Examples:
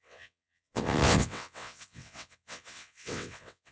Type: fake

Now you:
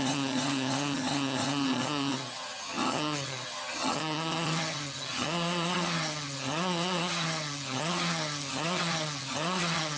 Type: fake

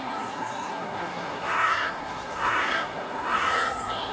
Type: fake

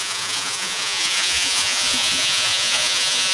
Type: fake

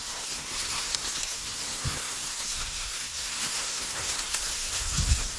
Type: fake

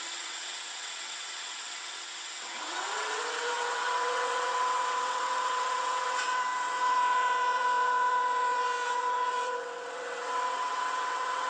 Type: fake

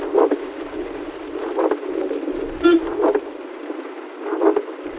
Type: real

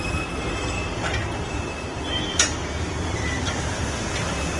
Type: real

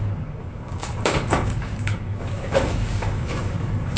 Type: fake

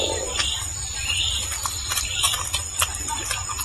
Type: real